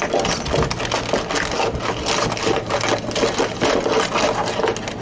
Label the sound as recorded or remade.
recorded